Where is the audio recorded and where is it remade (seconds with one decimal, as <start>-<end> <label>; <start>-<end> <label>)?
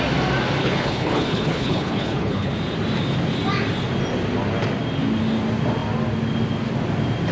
0.0-0.6 recorded; 0.6-2.5 remade; 2.5-7.3 recorded